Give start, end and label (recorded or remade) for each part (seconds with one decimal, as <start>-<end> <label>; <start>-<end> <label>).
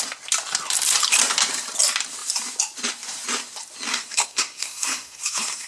0.0-3.9 recorded; 3.9-5.7 remade